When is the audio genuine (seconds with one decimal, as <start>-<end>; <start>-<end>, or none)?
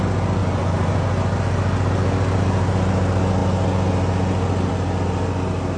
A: 0.0-0.4; 1.0-5.8